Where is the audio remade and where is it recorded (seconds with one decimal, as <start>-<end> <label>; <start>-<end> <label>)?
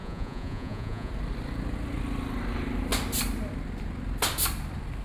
0.0-1.1 remade; 1.1-5.0 recorded